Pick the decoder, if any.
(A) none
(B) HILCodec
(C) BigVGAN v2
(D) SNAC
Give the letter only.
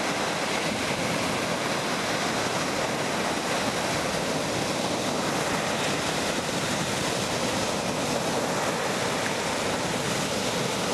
A